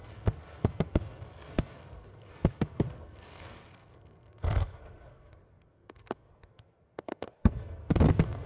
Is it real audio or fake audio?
fake